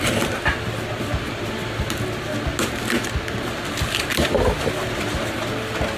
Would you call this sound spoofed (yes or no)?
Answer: no